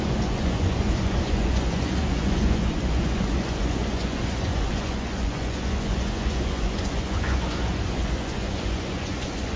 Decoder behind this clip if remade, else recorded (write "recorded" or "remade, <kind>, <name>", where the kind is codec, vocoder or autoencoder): remade, vocoder, Vocos